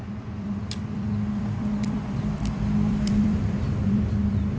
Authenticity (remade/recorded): remade